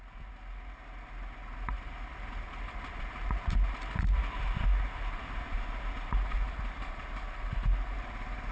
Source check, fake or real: real